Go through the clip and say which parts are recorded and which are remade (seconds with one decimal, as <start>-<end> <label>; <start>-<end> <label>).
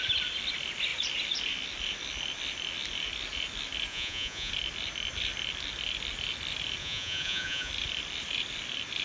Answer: 0.0-3.9 recorded; 3.9-4.5 remade; 4.5-6.8 recorded; 6.8-7.7 remade; 7.7-9.0 recorded